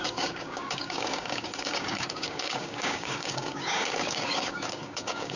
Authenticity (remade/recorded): remade